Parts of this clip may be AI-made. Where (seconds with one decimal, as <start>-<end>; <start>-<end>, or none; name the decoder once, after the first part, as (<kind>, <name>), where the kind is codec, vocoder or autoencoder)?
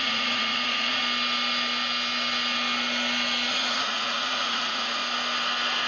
0.0-1.0 (vocoder, Vocos); 3.5-5.0